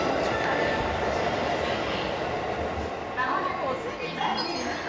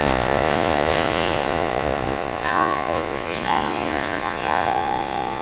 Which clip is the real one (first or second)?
first